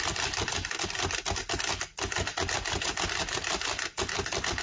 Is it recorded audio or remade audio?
recorded